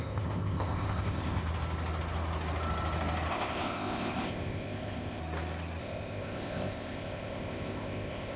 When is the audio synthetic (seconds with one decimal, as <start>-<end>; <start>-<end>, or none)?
0.0-1.4; 3.3-5.2; 5.8-8.4